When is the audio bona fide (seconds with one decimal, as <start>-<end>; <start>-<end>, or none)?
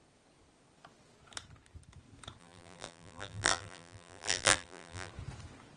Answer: 0.0-2.4; 5.1-5.8